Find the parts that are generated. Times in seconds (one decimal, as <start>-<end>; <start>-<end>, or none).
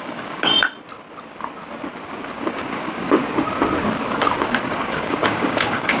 0.0-0.5; 2.4-3.2; 4.0-6.0